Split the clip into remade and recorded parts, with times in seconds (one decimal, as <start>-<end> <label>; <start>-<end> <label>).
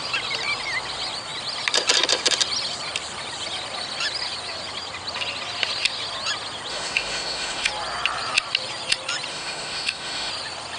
0.0-6.7 recorded; 6.7-7.7 remade; 7.7-9.3 recorded; 9.3-10.3 remade; 10.3-10.8 recorded